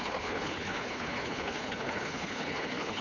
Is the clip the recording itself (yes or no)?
no